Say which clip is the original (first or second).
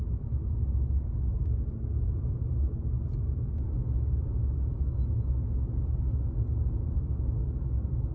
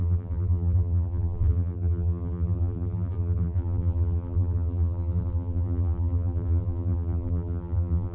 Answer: first